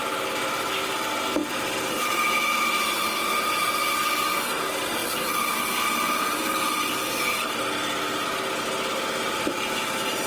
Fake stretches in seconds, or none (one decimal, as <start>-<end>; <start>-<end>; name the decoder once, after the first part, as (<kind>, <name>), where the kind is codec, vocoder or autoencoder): none